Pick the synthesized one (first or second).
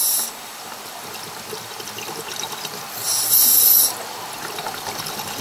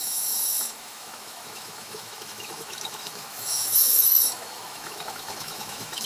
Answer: second